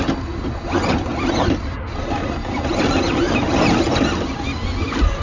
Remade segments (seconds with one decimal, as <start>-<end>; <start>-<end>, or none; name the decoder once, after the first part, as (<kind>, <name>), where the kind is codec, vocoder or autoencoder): none